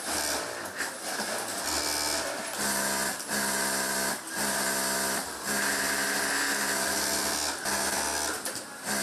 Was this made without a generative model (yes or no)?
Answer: yes